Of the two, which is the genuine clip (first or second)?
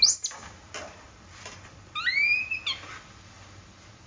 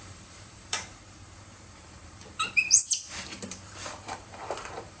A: first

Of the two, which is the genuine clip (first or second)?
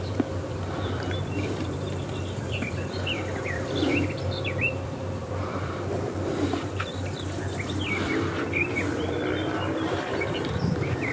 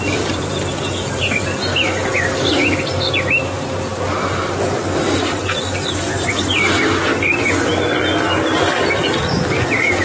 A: second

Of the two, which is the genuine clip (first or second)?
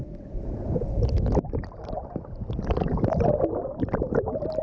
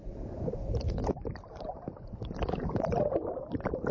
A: first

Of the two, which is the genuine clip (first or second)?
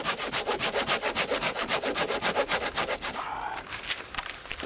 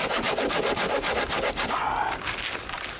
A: second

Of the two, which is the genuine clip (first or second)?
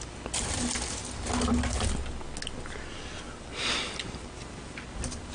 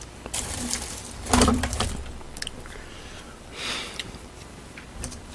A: first